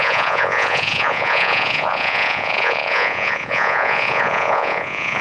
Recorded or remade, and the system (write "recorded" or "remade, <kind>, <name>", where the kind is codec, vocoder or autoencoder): remade, vocoder, Vocos